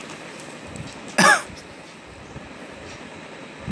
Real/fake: real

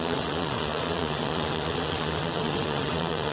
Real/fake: fake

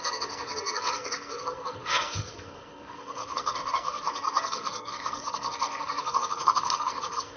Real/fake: fake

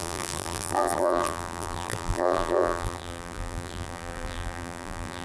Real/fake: fake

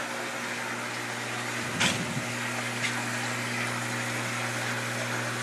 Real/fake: real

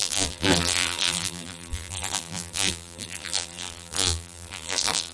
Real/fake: fake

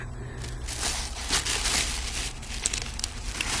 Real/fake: real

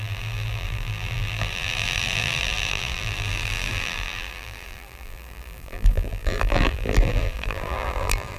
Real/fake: fake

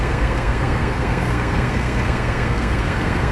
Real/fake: fake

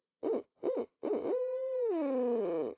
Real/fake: fake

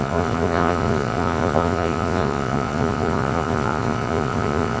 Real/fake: fake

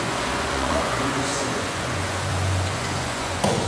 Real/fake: fake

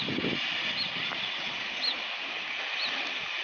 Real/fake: real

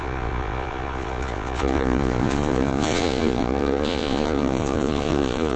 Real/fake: fake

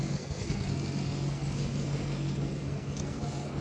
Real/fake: fake